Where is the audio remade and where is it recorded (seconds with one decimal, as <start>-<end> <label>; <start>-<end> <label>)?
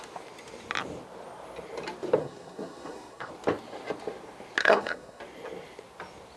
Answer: 0.0-2.2 recorded; 2.2-3.3 remade; 3.3-4.6 recorded; 4.6-5.2 remade; 5.2-6.4 recorded